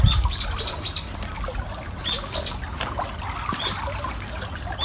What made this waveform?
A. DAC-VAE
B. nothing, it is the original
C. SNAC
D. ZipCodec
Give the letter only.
B